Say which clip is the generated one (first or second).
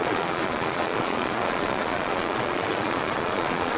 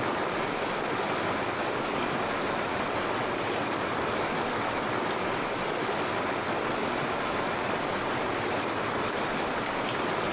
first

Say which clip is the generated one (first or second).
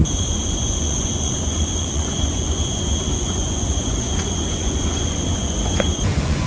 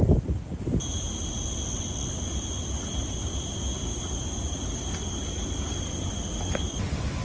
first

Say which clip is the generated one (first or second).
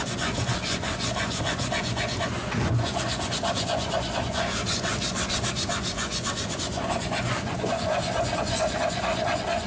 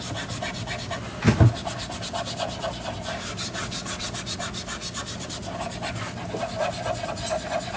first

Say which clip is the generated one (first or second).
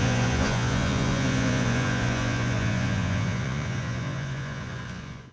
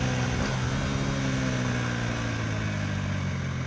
first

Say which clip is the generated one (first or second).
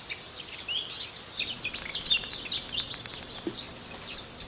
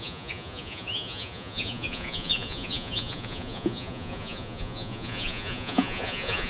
second